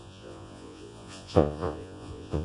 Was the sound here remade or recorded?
remade